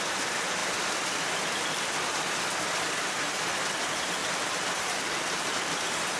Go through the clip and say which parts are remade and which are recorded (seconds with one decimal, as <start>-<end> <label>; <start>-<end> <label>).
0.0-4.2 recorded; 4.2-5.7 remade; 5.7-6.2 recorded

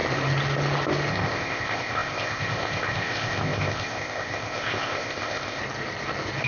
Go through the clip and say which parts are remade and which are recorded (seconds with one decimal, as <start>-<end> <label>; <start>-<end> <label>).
0.0-1.1 recorded; 1.1-5.6 remade; 5.6-6.5 recorded

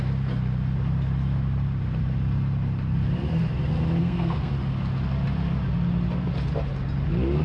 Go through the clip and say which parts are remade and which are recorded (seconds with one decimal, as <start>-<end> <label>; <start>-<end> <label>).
0.0-4.0 recorded; 4.0-4.5 remade; 4.5-7.4 recorded